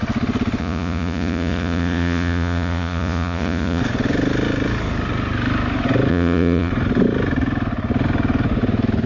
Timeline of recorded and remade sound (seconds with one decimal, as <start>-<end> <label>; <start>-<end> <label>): 0.0-0.6 recorded; 0.6-3.8 remade; 3.8-6.1 recorded; 6.1-6.7 remade; 6.7-9.1 recorded